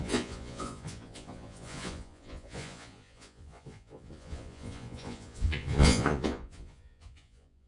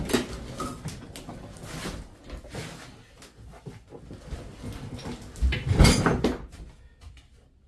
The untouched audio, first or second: second